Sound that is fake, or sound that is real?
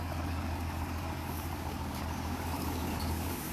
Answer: fake